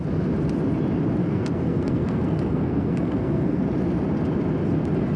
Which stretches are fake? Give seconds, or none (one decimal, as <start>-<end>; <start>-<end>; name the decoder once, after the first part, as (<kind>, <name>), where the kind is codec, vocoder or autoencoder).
1.2-3.6 (codec, SNAC)